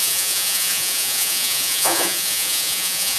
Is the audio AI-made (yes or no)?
yes